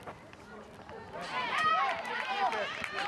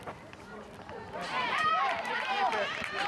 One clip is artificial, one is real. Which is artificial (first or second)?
second